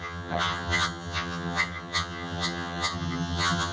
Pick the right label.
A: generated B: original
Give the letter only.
A